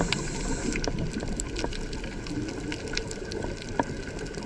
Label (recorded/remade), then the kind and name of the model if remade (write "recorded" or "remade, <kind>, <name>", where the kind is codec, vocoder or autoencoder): recorded